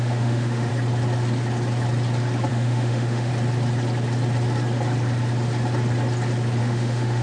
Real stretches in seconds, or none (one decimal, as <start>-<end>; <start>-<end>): 0.7-2.5; 3.3-6.6